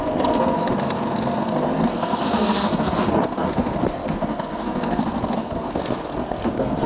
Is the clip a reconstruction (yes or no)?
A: yes